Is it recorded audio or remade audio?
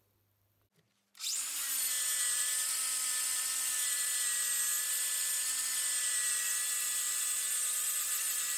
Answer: recorded